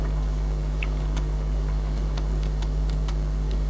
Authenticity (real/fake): fake